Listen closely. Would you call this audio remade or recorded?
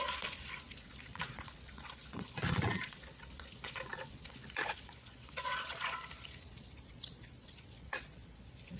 remade